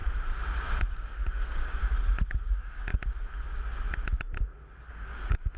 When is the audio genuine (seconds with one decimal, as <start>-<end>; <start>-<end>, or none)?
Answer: 0.0-0.9; 1.8-2.4; 2.9-4.9